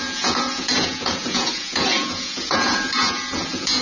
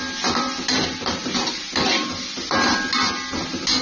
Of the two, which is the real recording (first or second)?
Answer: second